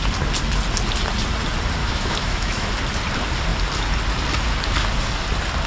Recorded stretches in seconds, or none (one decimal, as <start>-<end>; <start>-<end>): 0.0-1.8; 2.7-5.7